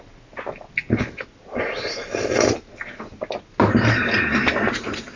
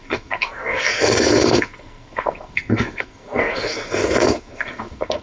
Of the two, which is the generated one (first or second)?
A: second